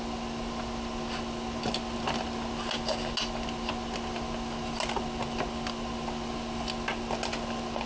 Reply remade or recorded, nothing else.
recorded